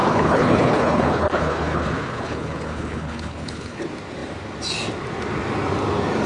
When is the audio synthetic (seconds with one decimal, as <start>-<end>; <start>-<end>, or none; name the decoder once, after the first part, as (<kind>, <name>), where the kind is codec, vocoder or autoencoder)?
0.0-3.8 (codec, HILCodec)